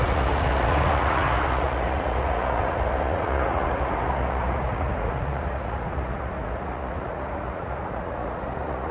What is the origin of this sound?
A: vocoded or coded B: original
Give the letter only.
A